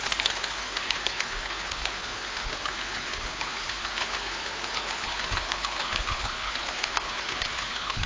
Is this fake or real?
fake